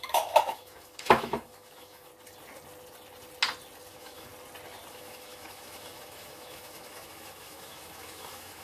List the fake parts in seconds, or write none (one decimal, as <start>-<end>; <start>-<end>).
0.0-2.1; 3.9-4.3; 4.9-8.6